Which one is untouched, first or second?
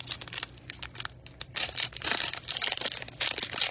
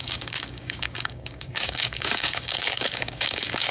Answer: first